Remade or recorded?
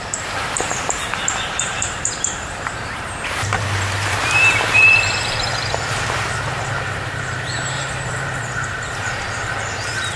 remade